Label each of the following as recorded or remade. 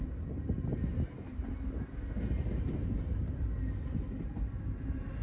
recorded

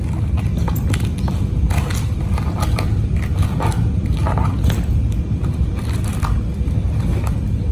recorded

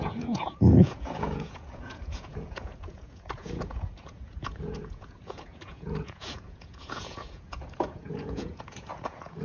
remade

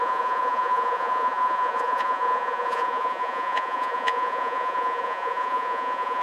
remade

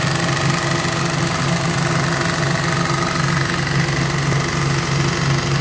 recorded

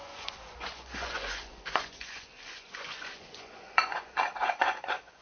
remade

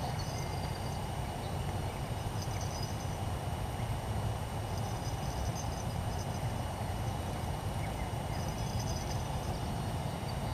recorded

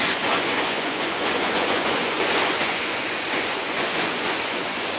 remade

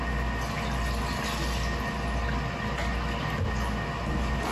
recorded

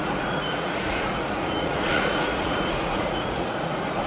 remade